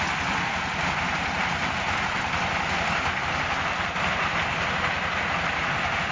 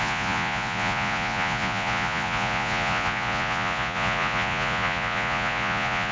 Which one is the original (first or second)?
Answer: first